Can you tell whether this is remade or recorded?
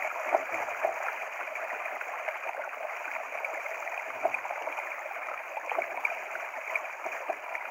recorded